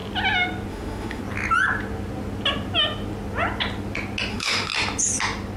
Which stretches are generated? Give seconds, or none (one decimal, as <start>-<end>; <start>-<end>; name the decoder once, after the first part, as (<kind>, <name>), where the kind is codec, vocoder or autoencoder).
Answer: 0.7-1.2 (autoencoder, DAC-VAE); 4.3-4.7